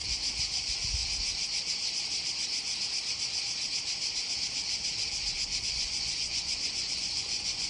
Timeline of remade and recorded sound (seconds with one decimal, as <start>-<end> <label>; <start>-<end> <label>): 0.0-0.6 recorded; 0.6-1.0 remade; 1.0-5.6 recorded; 5.6-7.7 remade